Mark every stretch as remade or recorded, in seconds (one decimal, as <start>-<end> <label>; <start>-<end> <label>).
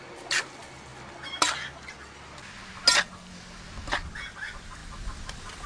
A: 0.0-5.7 recorded